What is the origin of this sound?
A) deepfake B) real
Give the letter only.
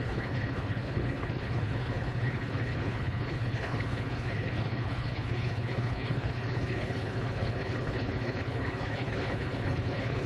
A